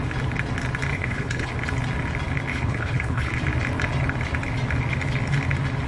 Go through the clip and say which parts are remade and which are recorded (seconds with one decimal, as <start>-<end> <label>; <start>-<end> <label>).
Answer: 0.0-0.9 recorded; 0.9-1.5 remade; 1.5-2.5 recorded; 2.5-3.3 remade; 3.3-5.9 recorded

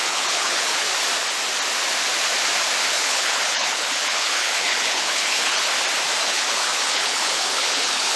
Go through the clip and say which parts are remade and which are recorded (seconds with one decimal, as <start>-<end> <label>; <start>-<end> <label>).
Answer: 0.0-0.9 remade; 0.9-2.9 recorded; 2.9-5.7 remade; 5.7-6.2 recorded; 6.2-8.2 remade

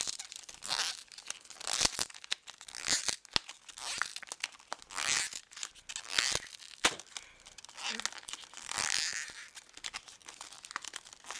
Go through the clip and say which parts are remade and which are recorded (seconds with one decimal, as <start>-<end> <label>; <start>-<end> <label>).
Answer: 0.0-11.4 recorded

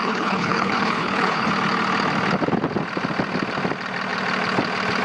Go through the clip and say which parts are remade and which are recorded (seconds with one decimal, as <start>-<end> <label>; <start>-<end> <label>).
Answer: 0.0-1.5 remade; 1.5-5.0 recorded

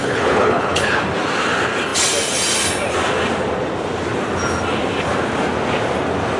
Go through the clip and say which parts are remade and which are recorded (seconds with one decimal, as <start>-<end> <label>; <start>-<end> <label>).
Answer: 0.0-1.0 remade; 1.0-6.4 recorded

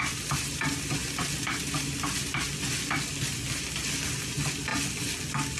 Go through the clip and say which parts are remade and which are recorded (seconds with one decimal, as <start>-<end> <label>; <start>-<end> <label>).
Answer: 0.0-5.6 recorded